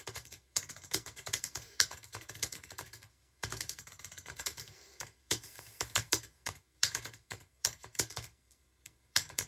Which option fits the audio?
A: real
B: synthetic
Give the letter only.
B